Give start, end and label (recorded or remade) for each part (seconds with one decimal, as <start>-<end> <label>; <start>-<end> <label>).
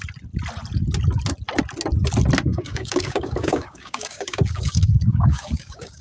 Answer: 0.0-2.5 recorded; 2.5-6.0 remade